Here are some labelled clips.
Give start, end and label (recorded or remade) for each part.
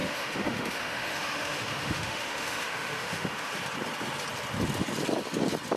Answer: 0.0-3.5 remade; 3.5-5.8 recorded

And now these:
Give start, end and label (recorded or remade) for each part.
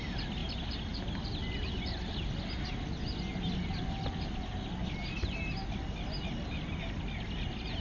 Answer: 0.0-7.8 recorded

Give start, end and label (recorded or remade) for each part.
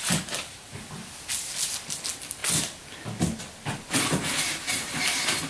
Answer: 0.0-5.5 recorded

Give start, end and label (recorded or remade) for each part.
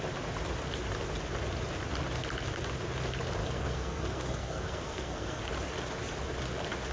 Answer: 0.0-3.4 recorded; 3.4-5.4 remade; 5.4-6.9 recorded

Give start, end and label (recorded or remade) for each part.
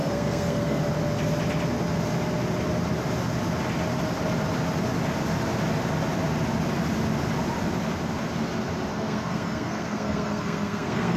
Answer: 0.0-0.8 remade; 0.8-8.9 recorded; 8.9-11.2 remade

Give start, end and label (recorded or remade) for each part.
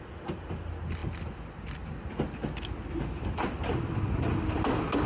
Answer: 0.0-5.1 recorded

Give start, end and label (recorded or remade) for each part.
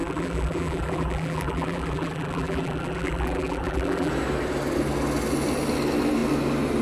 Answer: 0.0-4.1 remade; 4.1-6.8 recorded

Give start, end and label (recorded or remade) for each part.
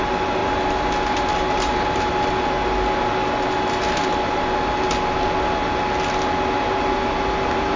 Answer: 0.0-0.4 recorded; 0.4-0.9 remade; 0.9-1.3 recorded; 1.3-2.1 remade; 2.1-7.8 recorded